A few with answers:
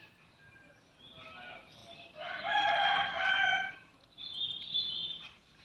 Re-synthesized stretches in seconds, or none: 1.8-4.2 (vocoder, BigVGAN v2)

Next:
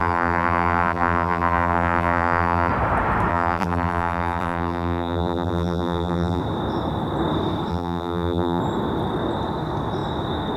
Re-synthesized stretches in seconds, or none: 0.0-2.7 (vocoder, BigVGAN v2); 3.3-6.4; 7.7-8.6